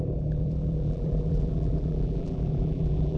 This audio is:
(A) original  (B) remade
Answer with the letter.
B